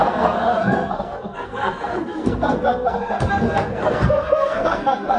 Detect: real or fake fake